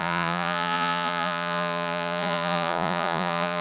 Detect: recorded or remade remade